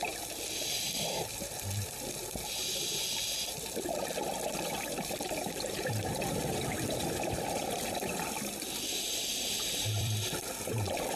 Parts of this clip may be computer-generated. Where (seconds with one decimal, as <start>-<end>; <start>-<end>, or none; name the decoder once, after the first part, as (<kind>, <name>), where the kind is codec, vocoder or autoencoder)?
0.0-2.2 (vocoder, BigVGAN v2); 3.4-11.2